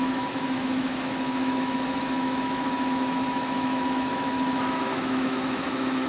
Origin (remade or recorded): remade